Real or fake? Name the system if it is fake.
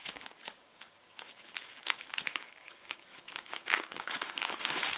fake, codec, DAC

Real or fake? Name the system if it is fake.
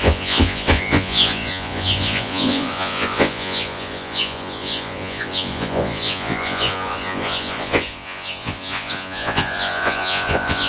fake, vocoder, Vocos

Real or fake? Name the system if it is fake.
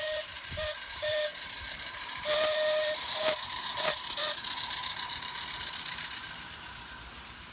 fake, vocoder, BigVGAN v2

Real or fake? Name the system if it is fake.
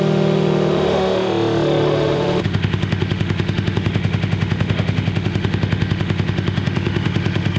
fake, autoencoder, DAC-VAE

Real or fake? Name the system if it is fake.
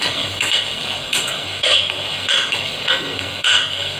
fake, codec, SNAC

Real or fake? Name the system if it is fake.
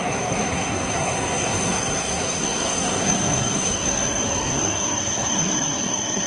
fake, codec, SNAC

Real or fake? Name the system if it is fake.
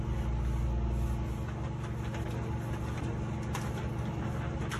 real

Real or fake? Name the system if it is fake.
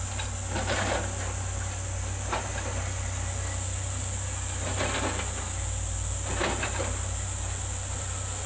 real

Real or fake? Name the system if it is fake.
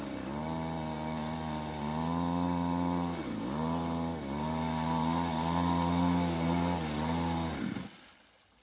real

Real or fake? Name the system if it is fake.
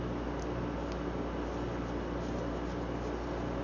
real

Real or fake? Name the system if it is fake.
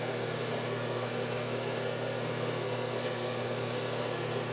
fake, codec, SNAC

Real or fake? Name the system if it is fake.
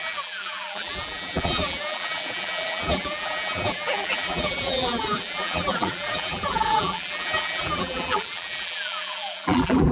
fake, vocoder, BigVGAN v2